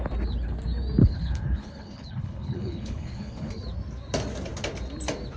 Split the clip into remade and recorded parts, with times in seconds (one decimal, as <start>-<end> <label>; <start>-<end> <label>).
0.0-1.0 recorded; 1.0-3.5 remade; 3.5-5.4 recorded